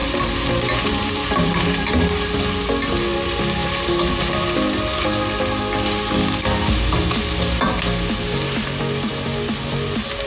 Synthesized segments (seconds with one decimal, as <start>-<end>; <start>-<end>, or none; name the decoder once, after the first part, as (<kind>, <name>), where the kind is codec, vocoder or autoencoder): 0.0-1.9 (vocoder, BigVGAN v2); 3.6-4.1